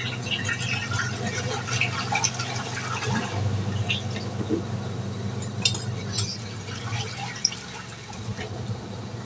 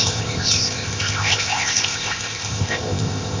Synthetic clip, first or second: second